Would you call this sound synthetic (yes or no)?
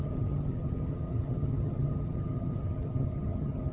yes